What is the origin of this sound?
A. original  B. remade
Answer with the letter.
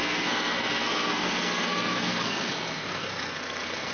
B